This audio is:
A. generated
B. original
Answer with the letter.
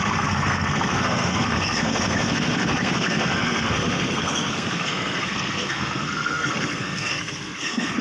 A